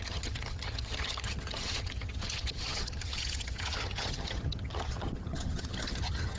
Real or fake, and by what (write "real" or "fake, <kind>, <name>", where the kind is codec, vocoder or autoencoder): fake, vocoder, HiFi-GAN